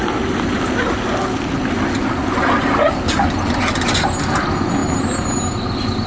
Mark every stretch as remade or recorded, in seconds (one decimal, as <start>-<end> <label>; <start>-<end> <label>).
0.0-6.1 recorded